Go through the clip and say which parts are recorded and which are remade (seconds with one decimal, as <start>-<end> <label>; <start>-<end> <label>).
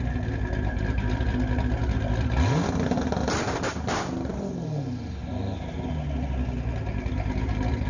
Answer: 0.0-7.9 recorded